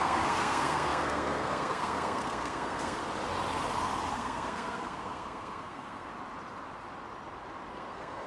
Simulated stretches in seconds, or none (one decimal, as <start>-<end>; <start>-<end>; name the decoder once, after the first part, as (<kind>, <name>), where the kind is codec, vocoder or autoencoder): 0.0-3.0 (codec, SNAC); 4.1-6.1; 7.7-8.3